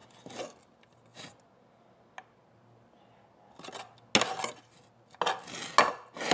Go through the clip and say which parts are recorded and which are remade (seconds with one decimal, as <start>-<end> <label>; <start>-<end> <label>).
0.0-6.3 recorded